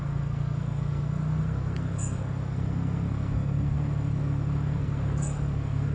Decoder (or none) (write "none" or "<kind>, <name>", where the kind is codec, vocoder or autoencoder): codec, SNAC